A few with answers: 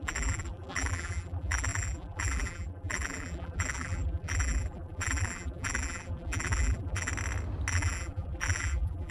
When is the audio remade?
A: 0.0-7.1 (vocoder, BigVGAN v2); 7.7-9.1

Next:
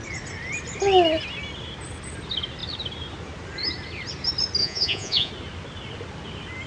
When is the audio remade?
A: 4.6-5.3 (vocoder, Vocos)

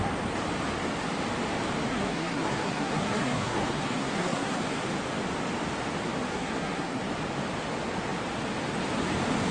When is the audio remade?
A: 1.9-4.6 (codec, SNAC); 6.3-7.0

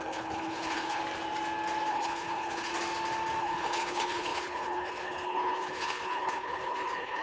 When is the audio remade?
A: 0.0-1.0 (codec, HILCodec); 1.9-2.7; 3.4-7.2

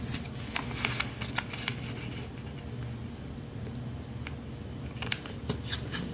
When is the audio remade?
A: none